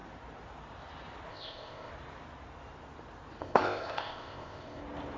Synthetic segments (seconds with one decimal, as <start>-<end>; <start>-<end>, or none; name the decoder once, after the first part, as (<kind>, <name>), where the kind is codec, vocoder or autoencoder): 1.3-1.9 (codec, ZipCodec); 3.4-4.8